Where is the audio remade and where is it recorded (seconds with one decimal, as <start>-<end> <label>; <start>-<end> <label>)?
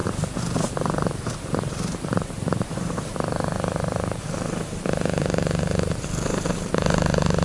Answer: 0.0-7.4 remade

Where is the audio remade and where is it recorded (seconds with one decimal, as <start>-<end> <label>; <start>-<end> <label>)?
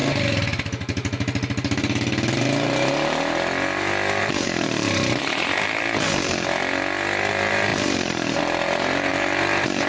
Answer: 0.0-4.2 recorded; 4.2-6.6 remade; 6.6-7.3 recorded; 7.3-9.9 remade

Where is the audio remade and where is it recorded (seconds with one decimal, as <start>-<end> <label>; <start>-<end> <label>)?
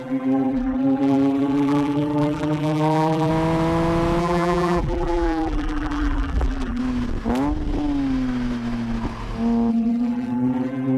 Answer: 0.0-3.3 remade; 3.3-4.2 recorded; 4.2-6.8 remade; 6.8-9.7 recorded; 9.7-11.0 remade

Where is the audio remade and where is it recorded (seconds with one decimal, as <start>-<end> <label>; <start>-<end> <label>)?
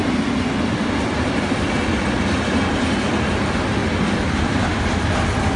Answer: 0.0-5.6 recorded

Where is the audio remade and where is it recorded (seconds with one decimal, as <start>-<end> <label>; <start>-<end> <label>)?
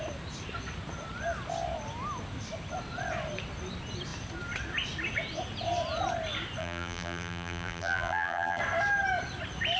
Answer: 0.0-6.6 recorded; 6.6-8.6 remade; 8.6-9.8 recorded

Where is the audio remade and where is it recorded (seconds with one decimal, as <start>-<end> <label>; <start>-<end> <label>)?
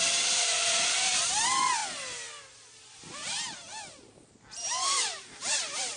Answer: 0.0-1.8 remade; 1.8-2.5 recorded; 2.5-3.7 remade; 3.7-4.9 recorded; 4.9-6.0 remade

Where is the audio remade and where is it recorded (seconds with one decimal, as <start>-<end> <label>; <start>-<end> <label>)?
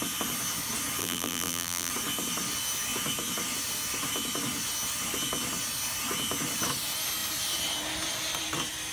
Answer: 0.0-1.0 recorded; 1.0-1.9 remade; 1.9-8.9 recorded